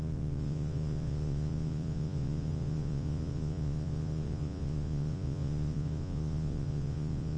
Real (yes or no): no